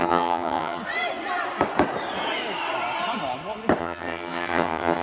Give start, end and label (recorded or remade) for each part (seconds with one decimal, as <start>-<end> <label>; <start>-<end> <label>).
0.0-0.8 remade; 0.8-3.8 recorded; 3.8-5.0 remade